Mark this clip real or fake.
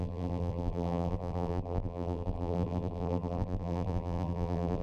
fake